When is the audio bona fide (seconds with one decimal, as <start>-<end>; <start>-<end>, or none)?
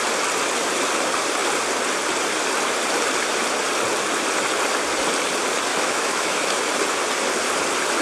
0.0-5.7; 6.7-8.0